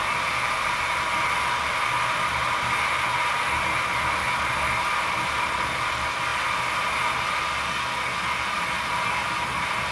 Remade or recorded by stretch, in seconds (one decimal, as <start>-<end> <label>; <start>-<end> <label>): 0.0-9.9 recorded